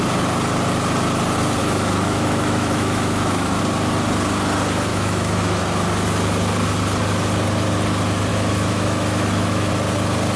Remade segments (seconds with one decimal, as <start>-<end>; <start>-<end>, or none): 1.6-3.6; 4.9-5.6; 8.3-9.7